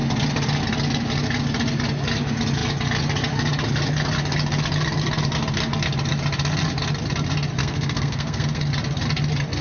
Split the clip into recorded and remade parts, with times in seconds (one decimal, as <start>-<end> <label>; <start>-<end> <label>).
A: 0.0-7.6 recorded; 7.6-8.6 remade; 8.6-9.6 recorded